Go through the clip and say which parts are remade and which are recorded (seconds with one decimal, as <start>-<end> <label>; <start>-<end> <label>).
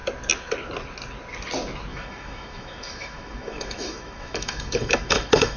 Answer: 0.0-1.9 recorded; 1.9-5.6 remade